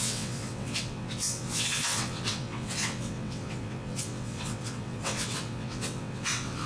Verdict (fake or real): fake